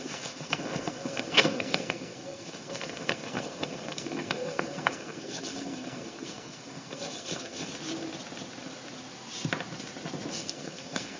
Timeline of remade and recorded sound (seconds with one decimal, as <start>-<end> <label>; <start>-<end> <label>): 0.0-7.7 remade; 7.7-10.3 recorded; 10.3-11.2 remade